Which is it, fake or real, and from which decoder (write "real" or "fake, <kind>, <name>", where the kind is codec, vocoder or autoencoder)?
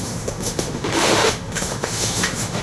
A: fake, autoencoder, DAC-VAE